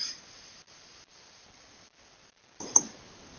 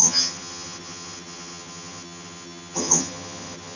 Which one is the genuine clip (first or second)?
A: first